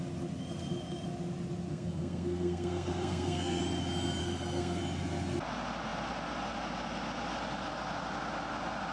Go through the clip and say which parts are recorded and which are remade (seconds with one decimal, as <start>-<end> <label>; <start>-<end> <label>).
0.0-1.7 recorded; 1.7-3.6 remade; 3.6-4.2 recorded; 4.2-4.8 remade; 4.8-8.9 recorded